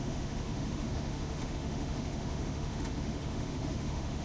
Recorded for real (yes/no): no